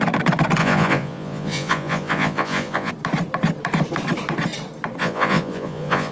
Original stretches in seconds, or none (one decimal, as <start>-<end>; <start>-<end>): 0.0-0.6; 2.9-5.0